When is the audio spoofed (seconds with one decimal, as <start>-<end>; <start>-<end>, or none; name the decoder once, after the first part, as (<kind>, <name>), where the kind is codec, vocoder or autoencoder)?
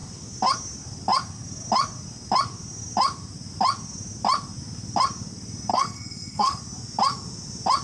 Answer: 5.7-6.6 (codec, SNAC)